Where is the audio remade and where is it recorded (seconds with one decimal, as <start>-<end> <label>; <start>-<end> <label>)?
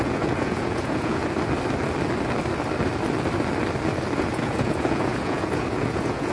0.0-1.2 remade; 1.2-4.2 recorded; 4.2-6.3 remade